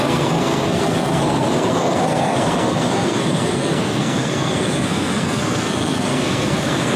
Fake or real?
fake